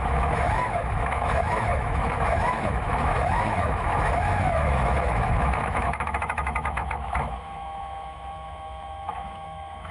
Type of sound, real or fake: fake